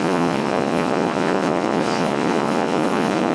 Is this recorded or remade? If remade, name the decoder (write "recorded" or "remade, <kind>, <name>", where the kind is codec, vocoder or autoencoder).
remade, vocoder, Vocos